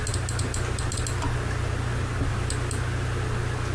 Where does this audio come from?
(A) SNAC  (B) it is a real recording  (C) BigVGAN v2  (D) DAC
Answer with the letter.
B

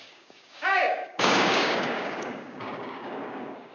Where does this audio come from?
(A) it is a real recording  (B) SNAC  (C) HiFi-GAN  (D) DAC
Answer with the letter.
D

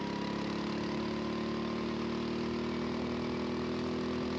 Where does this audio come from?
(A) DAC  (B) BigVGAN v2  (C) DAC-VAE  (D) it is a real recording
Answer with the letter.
D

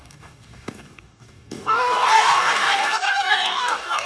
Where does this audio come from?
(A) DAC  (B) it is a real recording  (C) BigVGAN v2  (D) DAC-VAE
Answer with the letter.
A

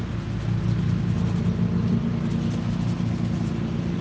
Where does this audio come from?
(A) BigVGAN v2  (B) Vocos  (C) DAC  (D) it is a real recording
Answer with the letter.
D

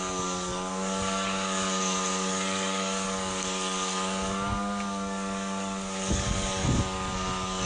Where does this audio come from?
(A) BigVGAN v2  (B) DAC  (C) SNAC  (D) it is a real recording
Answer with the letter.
B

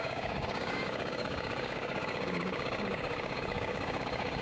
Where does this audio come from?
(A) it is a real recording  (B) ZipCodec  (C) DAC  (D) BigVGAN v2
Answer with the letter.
C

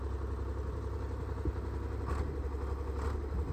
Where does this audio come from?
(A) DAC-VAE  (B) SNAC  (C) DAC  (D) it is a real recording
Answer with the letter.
D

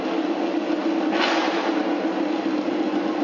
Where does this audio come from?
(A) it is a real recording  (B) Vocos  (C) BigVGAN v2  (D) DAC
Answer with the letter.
A